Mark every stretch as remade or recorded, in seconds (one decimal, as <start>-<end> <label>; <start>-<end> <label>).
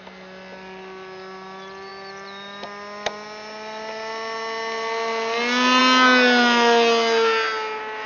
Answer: 0.0-8.1 recorded